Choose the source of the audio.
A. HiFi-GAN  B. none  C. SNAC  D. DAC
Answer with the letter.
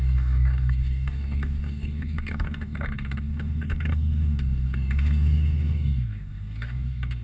D